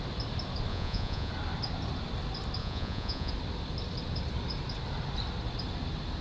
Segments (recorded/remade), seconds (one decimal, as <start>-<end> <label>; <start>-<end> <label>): 0.0-0.7 recorded; 0.7-1.3 remade; 1.3-2.6 recorded; 2.6-3.3 remade; 3.3-6.2 recorded